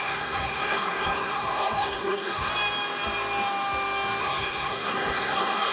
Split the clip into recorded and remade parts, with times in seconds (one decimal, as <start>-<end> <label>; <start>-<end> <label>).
0.0-2.5 remade; 2.5-4.2 recorded; 4.2-5.7 remade